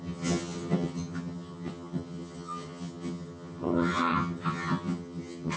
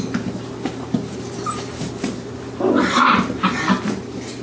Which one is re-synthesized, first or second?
first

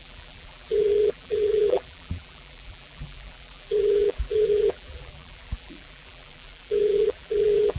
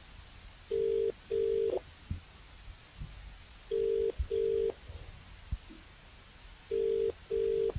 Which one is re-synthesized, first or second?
first